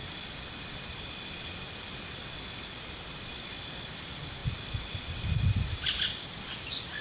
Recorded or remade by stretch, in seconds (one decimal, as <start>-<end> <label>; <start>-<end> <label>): 0.0-0.6 recorded; 0.6-2.2 remade; 2.2-3.2 recorded; 3.2-7.0 remade